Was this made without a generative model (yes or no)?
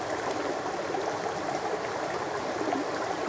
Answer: yes